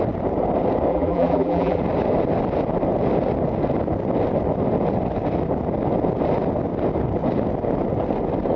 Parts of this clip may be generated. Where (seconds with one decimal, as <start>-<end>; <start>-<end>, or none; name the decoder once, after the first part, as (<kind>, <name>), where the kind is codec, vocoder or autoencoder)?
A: 0.9-1.8 (vocoder, BigVGAN v2)